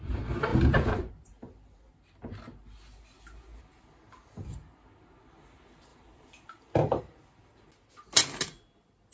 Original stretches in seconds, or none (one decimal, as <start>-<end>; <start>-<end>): 0.0-0.5; 1.1-5.9; 7.0-9.1